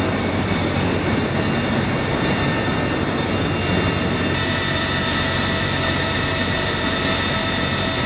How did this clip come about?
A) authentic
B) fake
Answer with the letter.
A